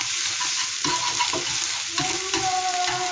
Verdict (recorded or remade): recorded